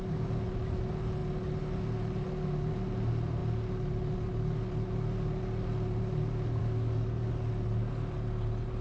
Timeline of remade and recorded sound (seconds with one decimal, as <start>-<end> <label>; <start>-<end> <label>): 0.0-6.6 recorded; 6.6-7.3 remade; 7.3-8.8 recorded